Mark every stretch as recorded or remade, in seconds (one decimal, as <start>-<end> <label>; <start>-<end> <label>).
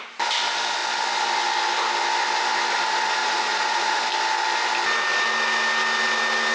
0.0-3.2 recorded; 3.2-4.0 remade; 4.0-6.5 recorded